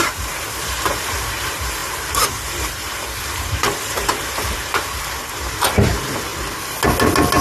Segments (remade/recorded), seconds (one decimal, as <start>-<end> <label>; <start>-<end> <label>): 0.0-6.3 remade; 6.3-7.4 recorded